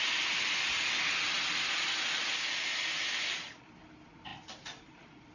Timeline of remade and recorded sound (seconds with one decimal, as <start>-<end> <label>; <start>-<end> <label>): 0.0-4.3 recorded; 4.3-5.3 remade